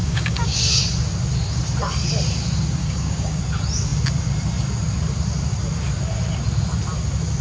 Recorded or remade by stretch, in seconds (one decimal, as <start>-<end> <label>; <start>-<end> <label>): 0.0-0.8 remade; 0.8-2.8 recorded; 2.8-3.4 remade; 3.4-7.4 recorded